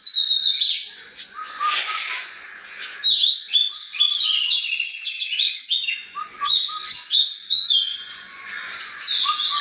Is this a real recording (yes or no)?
no